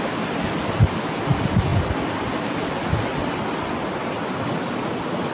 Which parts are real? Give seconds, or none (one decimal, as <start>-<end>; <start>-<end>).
0.0-5.3